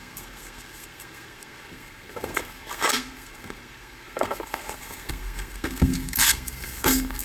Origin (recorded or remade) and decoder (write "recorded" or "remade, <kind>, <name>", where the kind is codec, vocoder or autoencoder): remade, codec, SNAC